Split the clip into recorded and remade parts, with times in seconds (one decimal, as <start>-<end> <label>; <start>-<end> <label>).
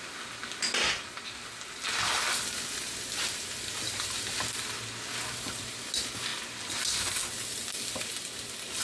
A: 0.0-8.8 recorded